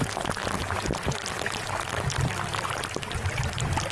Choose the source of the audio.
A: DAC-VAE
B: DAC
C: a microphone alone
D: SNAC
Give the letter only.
C